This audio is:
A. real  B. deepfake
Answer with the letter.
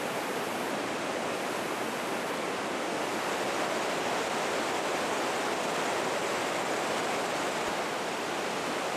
A